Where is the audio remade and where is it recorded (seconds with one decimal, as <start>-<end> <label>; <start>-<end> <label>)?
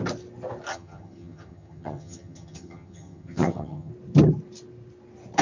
0.0-0.7 recorded; 0.7-3.9 remade; 3.9-5.4 recorded